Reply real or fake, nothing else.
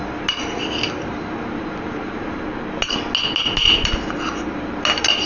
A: real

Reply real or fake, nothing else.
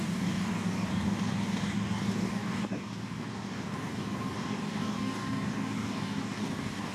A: fake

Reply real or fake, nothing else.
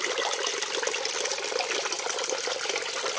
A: real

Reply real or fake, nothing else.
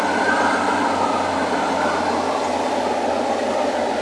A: real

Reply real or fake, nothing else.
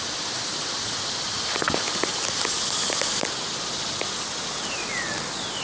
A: real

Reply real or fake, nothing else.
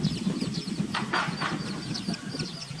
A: real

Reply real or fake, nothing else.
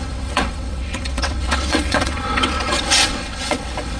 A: fake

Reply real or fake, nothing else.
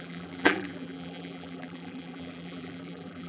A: fake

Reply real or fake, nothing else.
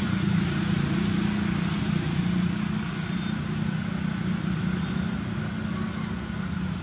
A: real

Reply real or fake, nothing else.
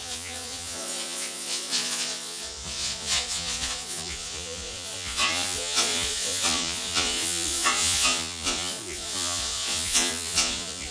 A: fake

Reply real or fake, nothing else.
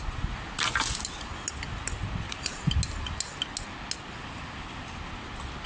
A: real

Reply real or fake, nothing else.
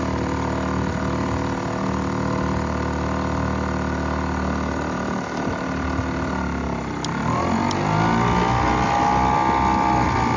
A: real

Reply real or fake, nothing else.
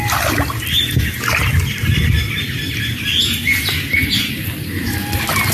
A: real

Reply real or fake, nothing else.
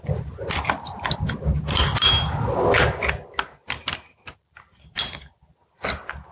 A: real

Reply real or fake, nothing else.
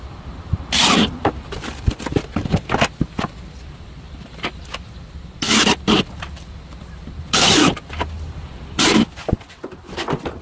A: fake